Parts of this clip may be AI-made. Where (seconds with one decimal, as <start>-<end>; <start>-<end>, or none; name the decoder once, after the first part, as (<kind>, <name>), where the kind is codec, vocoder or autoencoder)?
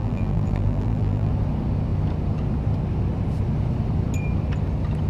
0.0-1.3 (vocoder, BigVGAN v2)